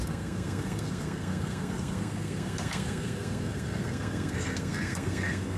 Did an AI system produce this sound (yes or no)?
yes